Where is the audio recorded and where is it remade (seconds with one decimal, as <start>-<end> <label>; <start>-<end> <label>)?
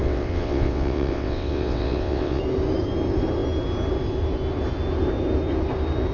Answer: 0.0-2.4 remade; 2.4-6.1 recorded